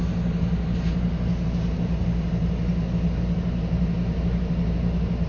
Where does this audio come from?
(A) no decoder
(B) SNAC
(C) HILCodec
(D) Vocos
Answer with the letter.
A